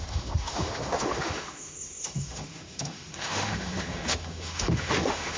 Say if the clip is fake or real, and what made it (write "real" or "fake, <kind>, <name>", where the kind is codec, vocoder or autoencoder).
fake, autoencoder, DAC-VAE